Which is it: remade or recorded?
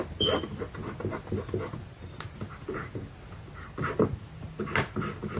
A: recorded